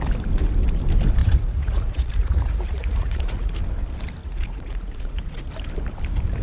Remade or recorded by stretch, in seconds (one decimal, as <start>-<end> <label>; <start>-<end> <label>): 0.0-1.2 recorded; 1.2-3.6 remade; 3.6-4.2 recorded; 4.2-5.5 remade; 5.5-6.4 recorded